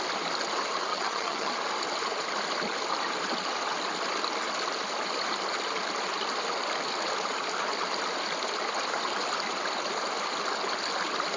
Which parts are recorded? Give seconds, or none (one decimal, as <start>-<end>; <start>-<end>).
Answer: 0.0-0.9; 1.5-11.4